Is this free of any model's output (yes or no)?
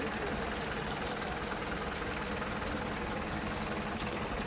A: yes